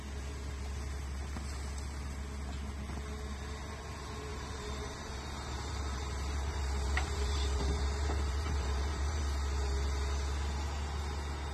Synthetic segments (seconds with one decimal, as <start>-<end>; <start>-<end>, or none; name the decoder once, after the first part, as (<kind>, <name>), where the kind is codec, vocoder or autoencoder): 4.3-9.2 (vocoder, BigVGAN v2)